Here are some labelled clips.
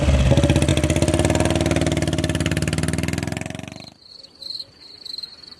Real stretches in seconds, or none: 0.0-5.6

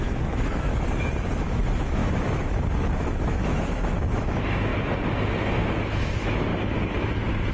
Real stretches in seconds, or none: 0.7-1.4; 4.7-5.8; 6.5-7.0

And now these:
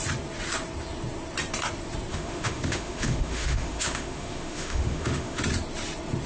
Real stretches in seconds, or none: 0.0-2.1; 5.4-6.3

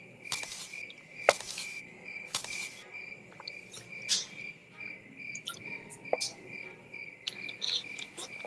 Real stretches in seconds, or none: 0.0-1.5; 2.4-8.5